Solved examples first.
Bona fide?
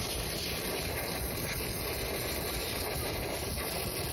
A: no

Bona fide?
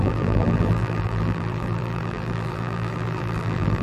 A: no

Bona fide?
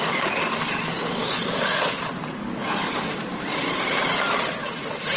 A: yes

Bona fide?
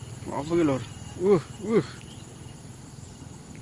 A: no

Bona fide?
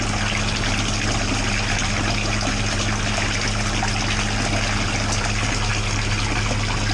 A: yes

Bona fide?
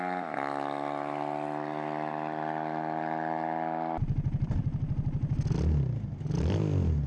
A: yes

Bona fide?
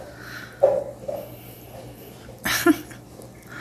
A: yes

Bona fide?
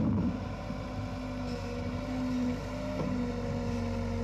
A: yes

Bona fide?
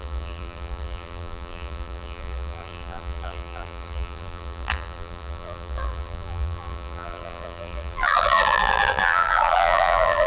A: no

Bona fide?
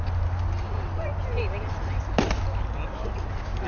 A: yes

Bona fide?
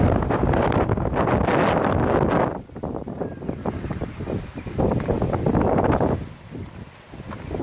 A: yes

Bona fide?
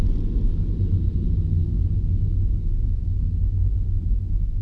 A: yes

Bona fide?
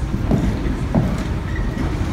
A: yes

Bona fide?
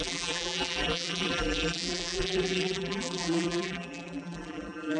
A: no